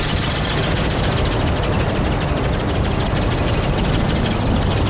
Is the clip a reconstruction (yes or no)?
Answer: no